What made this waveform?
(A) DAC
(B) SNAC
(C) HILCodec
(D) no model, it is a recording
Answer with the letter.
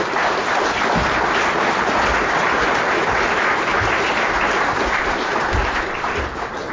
D